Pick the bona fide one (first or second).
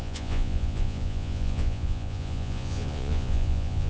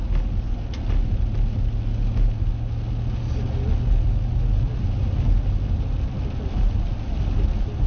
second